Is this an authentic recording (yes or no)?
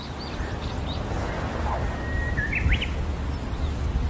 yes